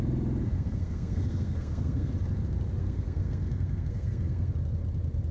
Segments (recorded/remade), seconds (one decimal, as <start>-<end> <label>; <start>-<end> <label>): 0.0-0.4 recorded; 0.4-2.1 remade; 2.1-2.8 recorded; 2.8-4.5 remade; 4.5-5.3 recorded